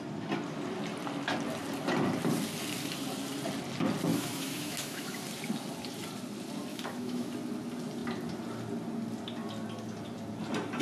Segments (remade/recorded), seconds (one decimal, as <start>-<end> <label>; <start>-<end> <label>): 0.0-4.1 recorded; 4.1-5.2 remade; 5.2-6.7 recorded; 6.7-7.3 remade; 7.3-10.8 recorded